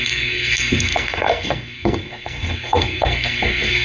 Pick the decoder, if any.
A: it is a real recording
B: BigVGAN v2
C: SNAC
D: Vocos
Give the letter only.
C